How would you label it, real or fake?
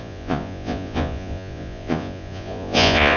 fake